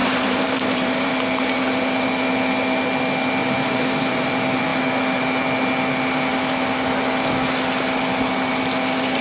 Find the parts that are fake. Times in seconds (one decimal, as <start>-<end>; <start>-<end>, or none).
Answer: 0.0-1.1; 3.4-4.3